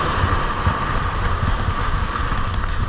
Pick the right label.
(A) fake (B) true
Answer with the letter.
B